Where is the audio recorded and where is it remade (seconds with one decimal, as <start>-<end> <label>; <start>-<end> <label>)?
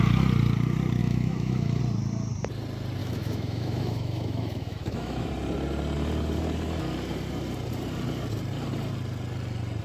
0.0-1.0 recorded; 1.0-1.8 remade; 1.8-3.0 recorded; 3.0-5.3 remade; 5.3-9.8 recorded